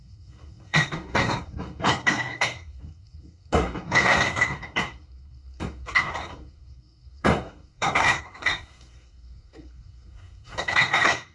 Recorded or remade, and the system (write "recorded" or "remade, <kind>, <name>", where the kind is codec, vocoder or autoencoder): remade, codec, SNAC